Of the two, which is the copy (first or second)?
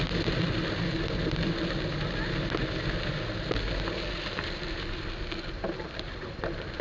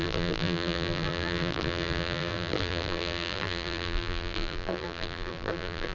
second